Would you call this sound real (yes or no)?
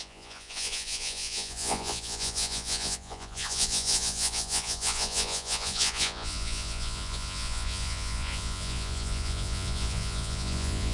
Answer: no